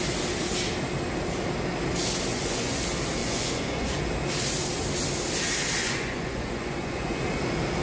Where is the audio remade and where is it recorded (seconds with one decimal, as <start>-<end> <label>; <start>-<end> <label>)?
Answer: 0.0-2.3 recorded; 2.3-2.8 remade; 2.8-3.2 recorded; 3.2-4.0 remade; 4.0-5.8 recorded; 5.8-7.2 remade; 7.2-7.8 recorded